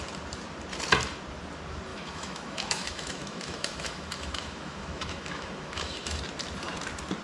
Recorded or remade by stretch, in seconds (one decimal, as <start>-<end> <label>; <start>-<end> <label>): 0.0-1.9 recorded; 1.9-6.2 remade; 6.2-7.2 recorded